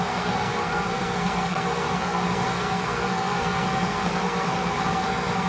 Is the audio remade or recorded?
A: remade